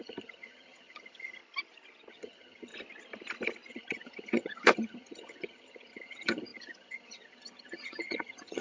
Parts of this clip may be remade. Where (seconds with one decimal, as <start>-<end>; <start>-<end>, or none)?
0.0-1.4; 2.1-2.7; 3.7-8.6